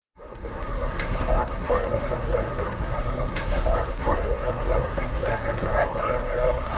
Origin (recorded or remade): remade